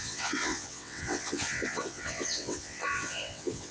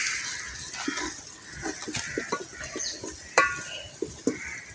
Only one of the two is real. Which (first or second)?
second